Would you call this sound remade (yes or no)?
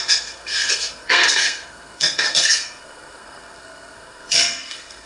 yes